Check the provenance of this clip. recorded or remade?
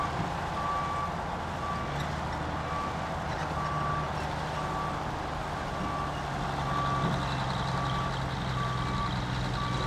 recorded